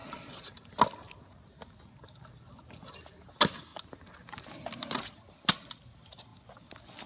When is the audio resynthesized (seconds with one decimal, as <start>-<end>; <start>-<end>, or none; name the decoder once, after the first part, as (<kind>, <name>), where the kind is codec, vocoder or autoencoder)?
0.0-0.5 (vocoder, Vocos)